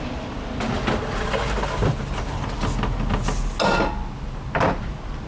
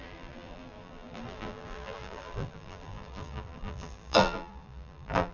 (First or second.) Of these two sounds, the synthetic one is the second